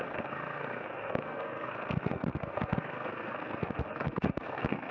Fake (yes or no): yes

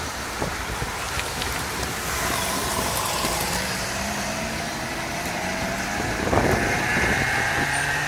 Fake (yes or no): yes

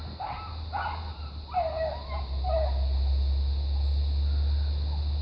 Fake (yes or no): no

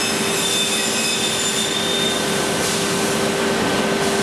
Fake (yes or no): no